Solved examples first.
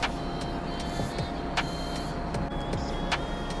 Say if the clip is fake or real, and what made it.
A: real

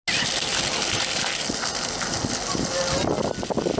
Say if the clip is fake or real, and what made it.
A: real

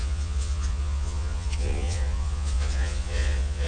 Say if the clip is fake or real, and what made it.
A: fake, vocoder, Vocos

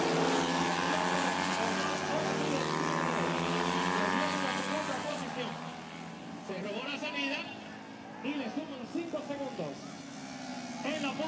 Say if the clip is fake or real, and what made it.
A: real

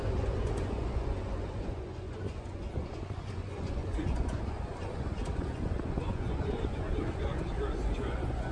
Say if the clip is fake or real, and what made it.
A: fake, vocoder, Vocos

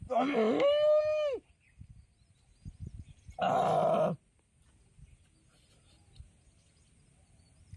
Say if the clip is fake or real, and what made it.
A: real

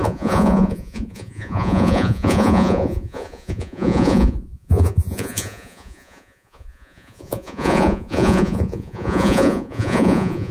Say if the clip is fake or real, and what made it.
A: fake, vocoder, Vocos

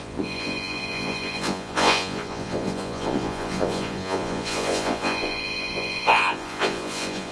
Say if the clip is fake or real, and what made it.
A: fake, vocoder, Vocos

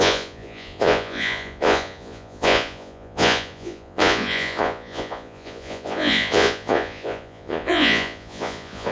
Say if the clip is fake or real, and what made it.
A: fake, vocoder, Vocos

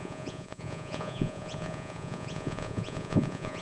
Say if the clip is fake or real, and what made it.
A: fake, vocoder, Vocos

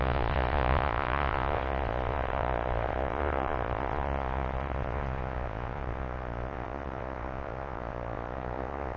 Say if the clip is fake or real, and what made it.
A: fake, vocoder, Vocos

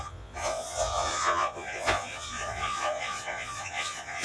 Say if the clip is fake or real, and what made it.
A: fake, vocoder, Vocos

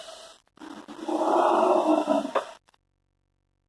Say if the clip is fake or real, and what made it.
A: real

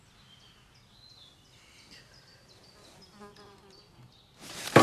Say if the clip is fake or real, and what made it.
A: real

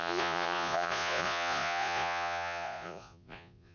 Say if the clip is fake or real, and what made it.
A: fake, vocoder, Vocos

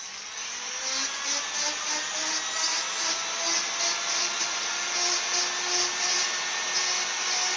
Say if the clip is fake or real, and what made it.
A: real